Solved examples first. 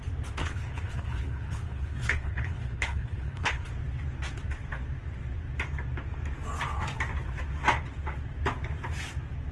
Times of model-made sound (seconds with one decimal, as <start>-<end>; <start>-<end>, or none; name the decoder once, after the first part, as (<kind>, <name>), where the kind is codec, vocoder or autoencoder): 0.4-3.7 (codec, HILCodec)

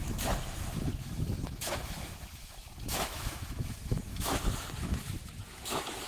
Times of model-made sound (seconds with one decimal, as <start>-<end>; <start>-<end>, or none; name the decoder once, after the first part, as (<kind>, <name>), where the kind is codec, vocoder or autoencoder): 0.0-6.1 (autoencoder, DAC-VAE)

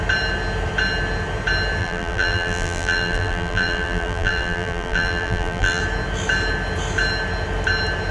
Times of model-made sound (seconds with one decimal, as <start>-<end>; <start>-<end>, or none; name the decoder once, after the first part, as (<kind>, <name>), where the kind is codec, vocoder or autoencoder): 1.8-5.8 (vocoder, BigVGAN v2)

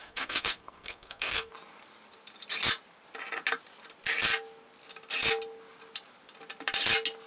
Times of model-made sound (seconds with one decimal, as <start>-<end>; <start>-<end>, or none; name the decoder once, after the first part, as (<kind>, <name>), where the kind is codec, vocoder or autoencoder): 0.0-1.5 (codec, SNAC)